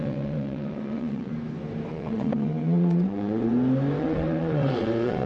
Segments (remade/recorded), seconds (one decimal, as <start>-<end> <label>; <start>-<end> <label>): 0.0-1.3 remade; 1.3-1.9 recorded; 1.9-3.5 remade; 3.5-4.0 recorded; 4.0-5.3 remade